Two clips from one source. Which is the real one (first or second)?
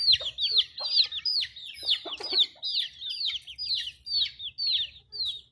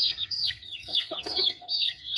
first